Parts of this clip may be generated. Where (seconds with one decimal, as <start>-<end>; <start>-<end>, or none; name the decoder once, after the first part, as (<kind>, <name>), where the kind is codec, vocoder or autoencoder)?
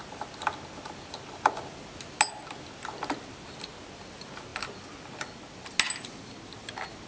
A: none